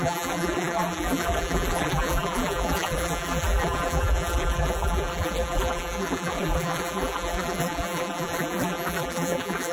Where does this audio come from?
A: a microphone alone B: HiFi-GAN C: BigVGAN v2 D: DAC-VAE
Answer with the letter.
C